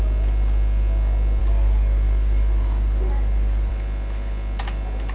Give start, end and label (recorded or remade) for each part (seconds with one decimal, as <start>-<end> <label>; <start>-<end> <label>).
0.0-1.4 recorded; 1.4-3.7 remade; 3.7-5.1 recorded